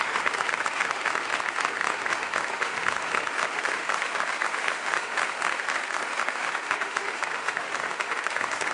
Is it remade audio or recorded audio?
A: remade